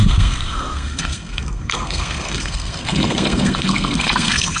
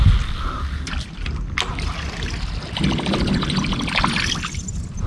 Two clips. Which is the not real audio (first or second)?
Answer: first